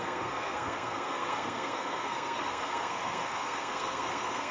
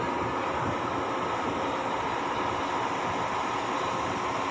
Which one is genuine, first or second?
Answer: second